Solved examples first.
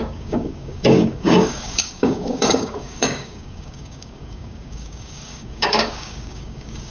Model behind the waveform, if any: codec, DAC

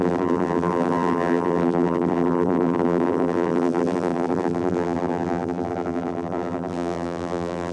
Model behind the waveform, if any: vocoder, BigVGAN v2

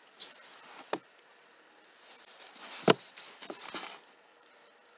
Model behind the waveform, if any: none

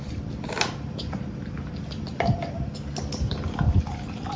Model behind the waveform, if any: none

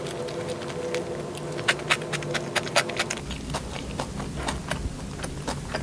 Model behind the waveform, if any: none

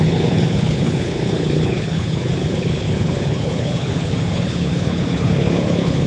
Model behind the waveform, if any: codec, HILCodec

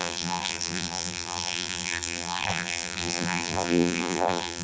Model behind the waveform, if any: vocoder, BigVGAN v2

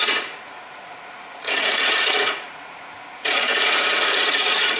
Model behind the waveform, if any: vocoder, Vocos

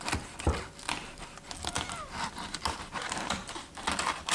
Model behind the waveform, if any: none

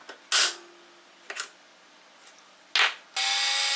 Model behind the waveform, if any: none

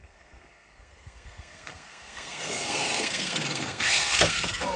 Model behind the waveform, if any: codec, SNAC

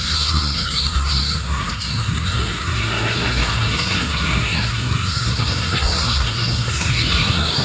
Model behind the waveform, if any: codec, SNAC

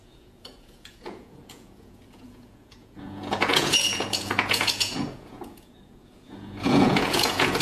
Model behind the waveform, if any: vocoder, Vocos